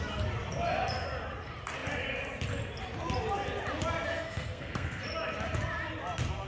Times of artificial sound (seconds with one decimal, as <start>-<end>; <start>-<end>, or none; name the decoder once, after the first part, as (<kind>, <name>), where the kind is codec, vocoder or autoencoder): 4.1-5.0 (codec, SNAC)